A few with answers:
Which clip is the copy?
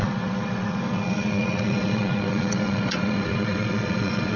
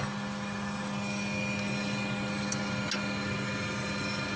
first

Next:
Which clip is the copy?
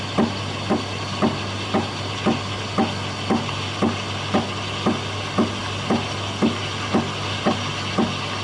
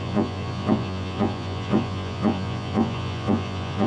second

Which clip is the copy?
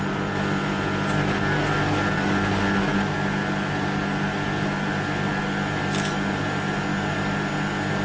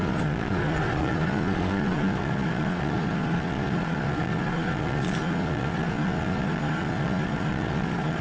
second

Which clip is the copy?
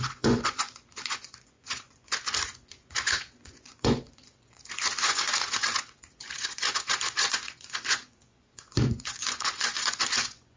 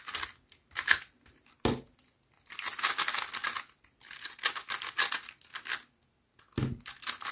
first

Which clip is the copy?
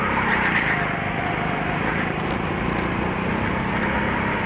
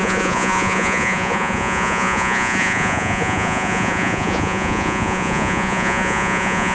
second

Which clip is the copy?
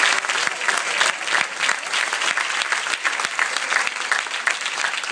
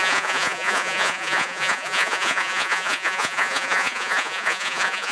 second